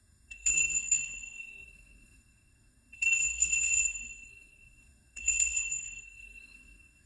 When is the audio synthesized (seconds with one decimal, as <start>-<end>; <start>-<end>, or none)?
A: 0.0-7.1